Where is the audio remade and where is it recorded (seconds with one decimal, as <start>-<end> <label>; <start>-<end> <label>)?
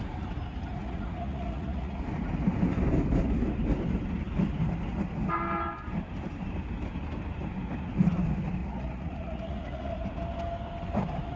0.0-0.8 recorded; 0.8-2.0 remade; 2.0-8.6 recorded; 8.6-9.9 remade; 9.9-11.4 recorded